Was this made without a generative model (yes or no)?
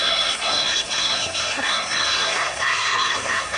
no